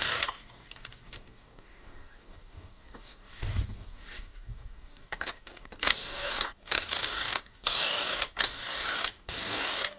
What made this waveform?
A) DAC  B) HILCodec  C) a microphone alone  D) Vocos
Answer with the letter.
A